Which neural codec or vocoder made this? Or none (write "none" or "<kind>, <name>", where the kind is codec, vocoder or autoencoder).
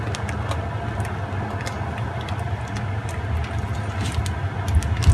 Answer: none